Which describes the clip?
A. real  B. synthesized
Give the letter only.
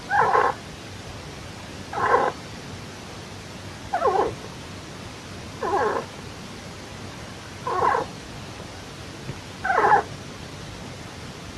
A